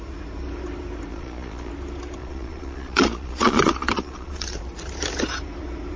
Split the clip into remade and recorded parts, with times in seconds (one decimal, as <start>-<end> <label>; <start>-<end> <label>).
0.0-1.1 recorded; 1.1-1.7 remade; 1.7-2.2 recorded; 2.2-4.6 remade; 4.6-6.0 recorded

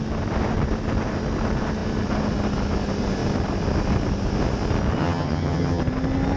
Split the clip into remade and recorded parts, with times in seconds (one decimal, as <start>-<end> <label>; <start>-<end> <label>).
0.0-5.0 recorded; 5.0-5.8 remade; 5.8-6.4 recorded

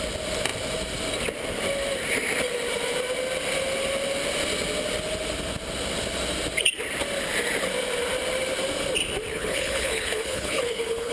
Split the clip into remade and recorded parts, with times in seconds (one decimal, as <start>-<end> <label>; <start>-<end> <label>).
0.0-9.3 recorded; 9.3-11.1 remade

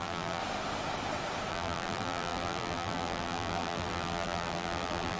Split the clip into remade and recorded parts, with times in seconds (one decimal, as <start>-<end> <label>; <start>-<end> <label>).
0.0-0.4 remade; 0.4-1.5 recorded; 1.5-5.2 remade

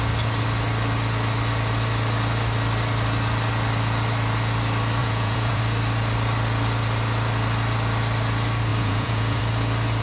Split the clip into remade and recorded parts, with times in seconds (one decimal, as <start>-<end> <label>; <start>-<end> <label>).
0.0-5.0 recorded; 5.0-5.6 remade; 5.6-8.7 recorded; 8.7-9.4 remade; 9.4-10.0 recorded

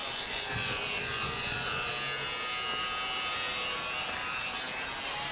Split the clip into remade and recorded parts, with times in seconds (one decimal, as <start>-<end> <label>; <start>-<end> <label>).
0.0-1.9 remade; 1.9-5.3 recorded